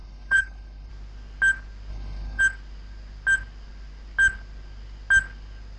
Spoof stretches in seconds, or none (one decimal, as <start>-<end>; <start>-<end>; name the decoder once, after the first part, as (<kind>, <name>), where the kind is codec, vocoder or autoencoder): 0.0-0.9 (codec, HILCodec); 1.9-2.4